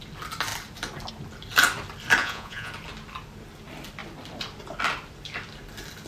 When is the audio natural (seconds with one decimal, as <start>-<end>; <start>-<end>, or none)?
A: 0.0-2.2; 2.7-6.1